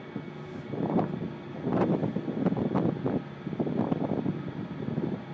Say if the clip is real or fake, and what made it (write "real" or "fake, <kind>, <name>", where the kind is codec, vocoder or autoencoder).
real